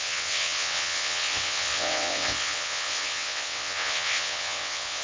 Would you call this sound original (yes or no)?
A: no